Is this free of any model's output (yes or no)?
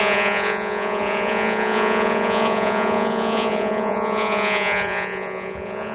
no